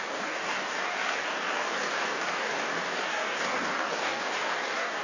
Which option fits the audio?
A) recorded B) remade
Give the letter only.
B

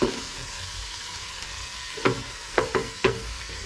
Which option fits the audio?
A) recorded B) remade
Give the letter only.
B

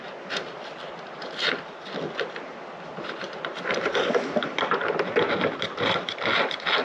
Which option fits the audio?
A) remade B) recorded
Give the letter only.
B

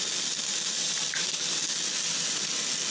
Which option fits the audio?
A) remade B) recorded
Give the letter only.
B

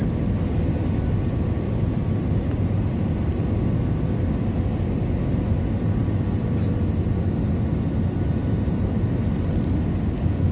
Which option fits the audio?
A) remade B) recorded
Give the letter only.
B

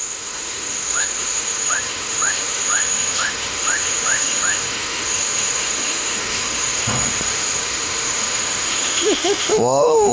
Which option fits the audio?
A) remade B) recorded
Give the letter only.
A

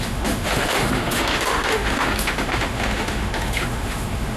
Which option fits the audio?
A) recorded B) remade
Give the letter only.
B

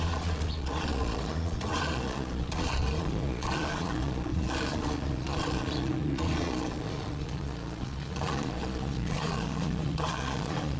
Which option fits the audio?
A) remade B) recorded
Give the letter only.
A